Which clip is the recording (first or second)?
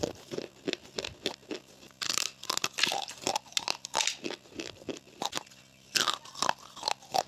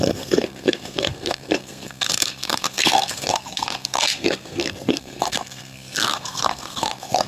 first